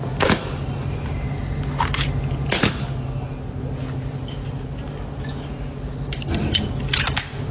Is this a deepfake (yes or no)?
no